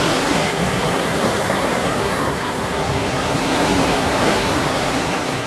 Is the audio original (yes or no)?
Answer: no